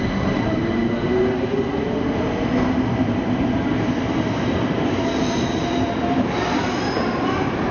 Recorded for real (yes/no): yes